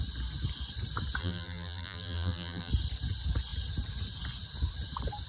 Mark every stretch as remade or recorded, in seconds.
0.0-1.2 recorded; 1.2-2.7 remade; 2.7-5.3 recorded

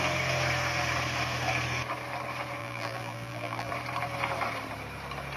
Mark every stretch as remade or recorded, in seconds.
0.0-2.6 recorded; 2.6-3.7 remade; 3.7-5.4 recorded

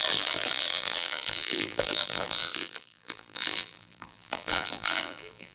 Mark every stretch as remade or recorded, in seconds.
0.0-5.5 remade

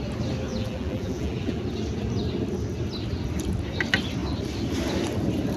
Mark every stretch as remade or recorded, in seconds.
0.0-0.5 recorded; 0.5-1.6 remade; 1.6-5.6 recorded